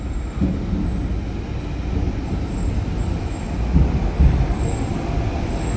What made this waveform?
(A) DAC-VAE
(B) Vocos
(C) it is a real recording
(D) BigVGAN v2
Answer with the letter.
C